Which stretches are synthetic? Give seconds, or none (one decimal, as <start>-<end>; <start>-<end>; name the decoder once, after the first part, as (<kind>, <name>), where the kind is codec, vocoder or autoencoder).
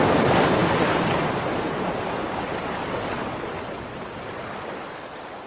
none